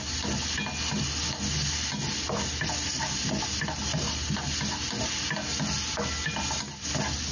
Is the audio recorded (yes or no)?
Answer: yes